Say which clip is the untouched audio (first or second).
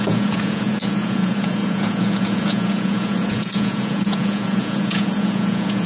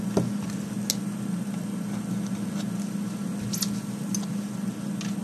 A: second